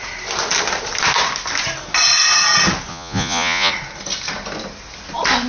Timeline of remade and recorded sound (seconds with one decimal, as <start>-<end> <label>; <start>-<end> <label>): 0.0-2.9 recorded; 2.9-3.7 remade; 3.7-5.5 recorded